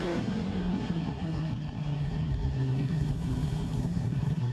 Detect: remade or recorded remade